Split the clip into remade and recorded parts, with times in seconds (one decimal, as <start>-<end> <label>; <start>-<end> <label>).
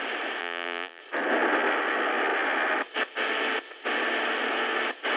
0.0-0.4 recorded; 0.4-1.0 remade; 1.0-5.2 recorded